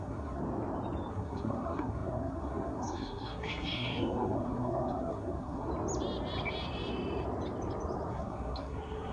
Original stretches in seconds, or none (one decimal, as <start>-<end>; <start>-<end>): 0.4-1.1; 5.7-8.1